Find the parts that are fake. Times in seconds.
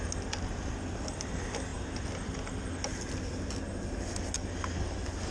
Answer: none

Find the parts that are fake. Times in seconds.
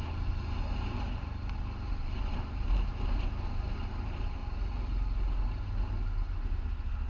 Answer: none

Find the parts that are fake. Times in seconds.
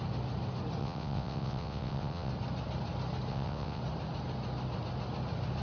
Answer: 0.8-2.3 (vocoder, WaveNeXt); 3.3-3.8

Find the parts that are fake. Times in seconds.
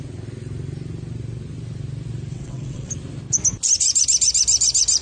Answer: 2.3-2.9 (vocoder, WaveNeXt)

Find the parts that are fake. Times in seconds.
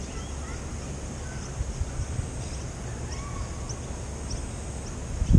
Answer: none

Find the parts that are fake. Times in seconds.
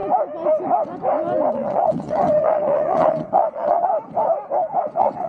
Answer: 1.5-3.9 (vocoder, WaveNeXt); 4.8-5.3